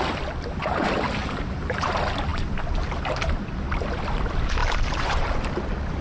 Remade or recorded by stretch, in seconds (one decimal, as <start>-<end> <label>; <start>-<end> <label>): 0.0-1.2 recorded; 1.2-1.9 remade; 1.9-4.6 recorded; 4.6-5.3 remade; 5.3-6.0 recorded